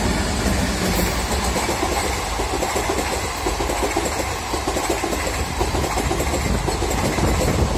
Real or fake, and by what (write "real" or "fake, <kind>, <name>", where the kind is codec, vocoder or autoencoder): real